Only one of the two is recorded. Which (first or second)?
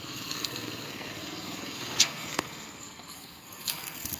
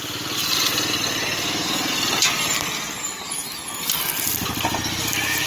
second